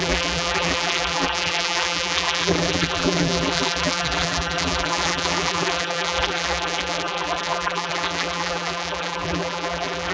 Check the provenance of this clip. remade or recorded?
remade